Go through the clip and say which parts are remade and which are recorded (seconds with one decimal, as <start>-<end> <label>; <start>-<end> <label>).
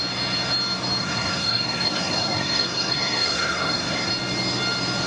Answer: 0.0-1.0 recorded; 1.0-4.1 remade; 4.1-5.1 recorded